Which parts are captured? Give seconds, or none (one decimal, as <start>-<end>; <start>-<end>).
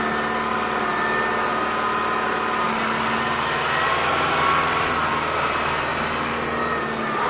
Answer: 0.0-7.3